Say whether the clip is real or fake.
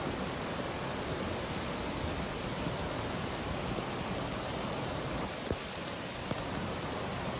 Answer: real